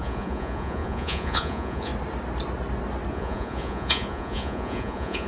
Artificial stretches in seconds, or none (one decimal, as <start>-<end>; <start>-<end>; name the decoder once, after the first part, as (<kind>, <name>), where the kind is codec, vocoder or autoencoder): 0.0-1.9 (vocoder, Vocos); 3.1-5.3